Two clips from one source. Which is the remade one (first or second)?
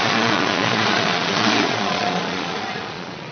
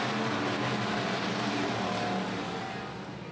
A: first